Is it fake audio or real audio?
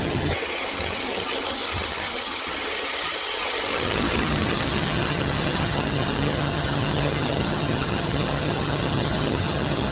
fake